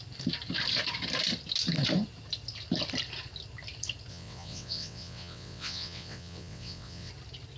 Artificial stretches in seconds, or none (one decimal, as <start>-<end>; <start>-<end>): 4.1-7.1